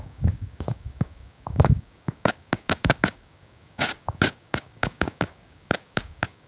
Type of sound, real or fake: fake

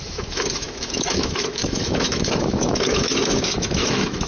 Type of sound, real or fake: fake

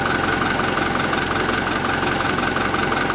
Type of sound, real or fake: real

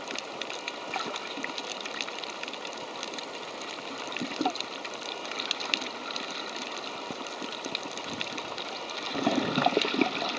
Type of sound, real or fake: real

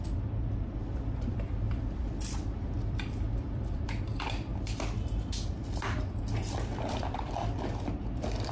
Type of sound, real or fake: fake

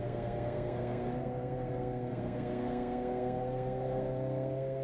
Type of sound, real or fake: fake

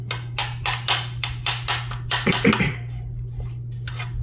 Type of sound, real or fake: real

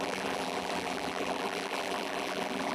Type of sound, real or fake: fake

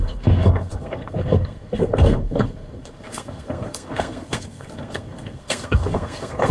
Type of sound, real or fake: fake